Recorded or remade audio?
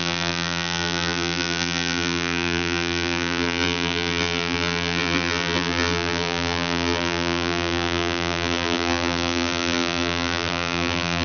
remade